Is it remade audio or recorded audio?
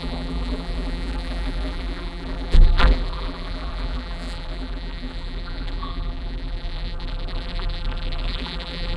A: remade